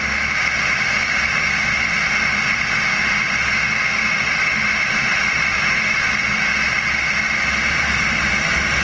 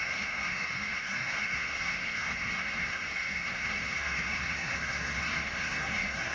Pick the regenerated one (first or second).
second